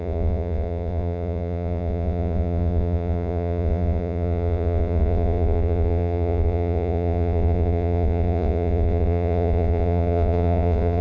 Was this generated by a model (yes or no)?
yes